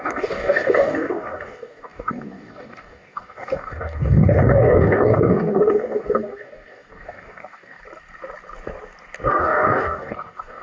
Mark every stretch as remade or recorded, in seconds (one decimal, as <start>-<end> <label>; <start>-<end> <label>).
0.0-7.8 remade; 7.8-9.4 recorded; 9.4-10.6 remade